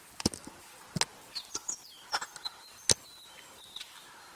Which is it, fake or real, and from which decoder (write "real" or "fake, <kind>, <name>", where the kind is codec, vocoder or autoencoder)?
real